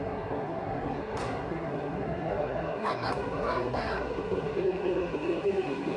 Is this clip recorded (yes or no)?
no